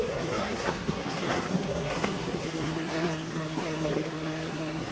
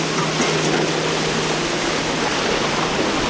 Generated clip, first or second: first